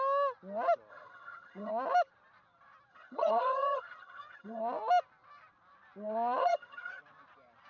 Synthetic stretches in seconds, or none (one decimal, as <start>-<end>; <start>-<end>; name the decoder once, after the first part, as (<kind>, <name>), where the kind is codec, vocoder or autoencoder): 0.9-1.7 (vocoder, HiFi-GAN); 2.9-4.6; 6.4-7.0